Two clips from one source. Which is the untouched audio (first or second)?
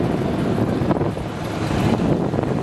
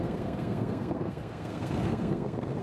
first